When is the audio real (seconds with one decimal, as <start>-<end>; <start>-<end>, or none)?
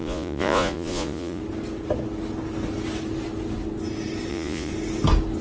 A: 1.4-4.3; 4.7-5.4